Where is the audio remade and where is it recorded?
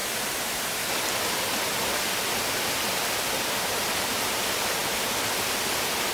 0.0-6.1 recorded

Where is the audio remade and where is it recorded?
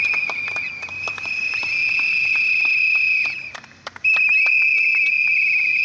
0.0-5.8 recorded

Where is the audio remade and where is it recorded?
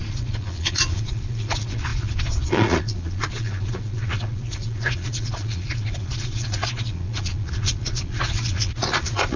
0.0-9.4 remade